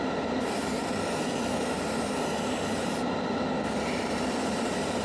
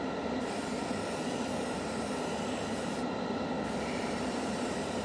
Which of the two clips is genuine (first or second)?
first